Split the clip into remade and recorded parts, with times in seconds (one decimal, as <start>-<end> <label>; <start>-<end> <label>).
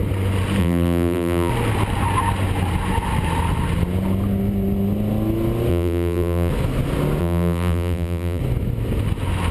0.0-0.6 recorded; 0.6-1.5 remade; 1.5-5.7 recorded; 5.7-6.5 remade; 6.5-7.2 recorded; 7.2-8.4 remade; 8.4-9.5 recorded